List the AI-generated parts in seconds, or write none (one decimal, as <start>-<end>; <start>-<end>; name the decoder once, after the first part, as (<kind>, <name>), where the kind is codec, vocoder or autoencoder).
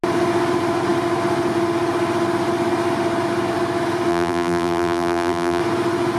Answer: 4.1-5.6 (vocoder, BigVGAN v2)